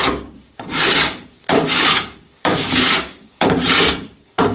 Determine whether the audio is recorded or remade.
remade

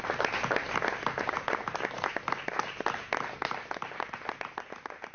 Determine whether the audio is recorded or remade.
recorded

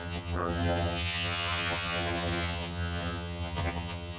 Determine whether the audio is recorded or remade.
remade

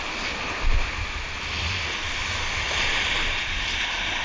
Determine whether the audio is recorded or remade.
recorded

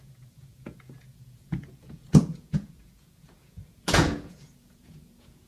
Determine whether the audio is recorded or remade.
remade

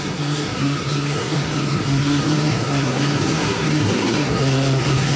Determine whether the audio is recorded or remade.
remade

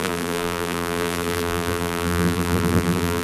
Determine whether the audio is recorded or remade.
remade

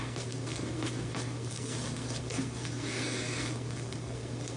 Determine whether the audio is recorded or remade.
remade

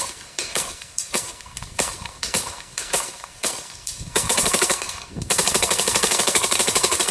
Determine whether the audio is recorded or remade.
remade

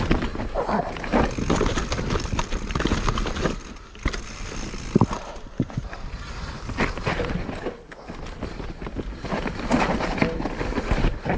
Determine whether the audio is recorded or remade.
recorded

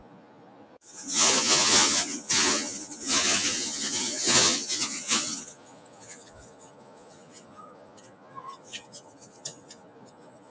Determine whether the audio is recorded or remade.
remade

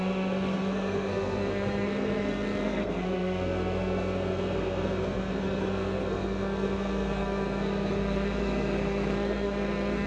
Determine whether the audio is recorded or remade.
remade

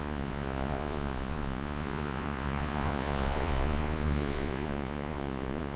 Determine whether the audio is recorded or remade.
remade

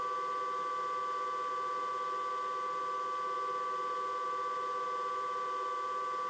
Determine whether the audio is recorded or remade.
recorded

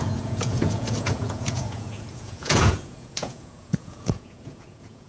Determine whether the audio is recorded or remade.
remade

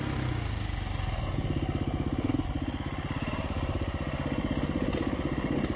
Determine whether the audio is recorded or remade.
recorded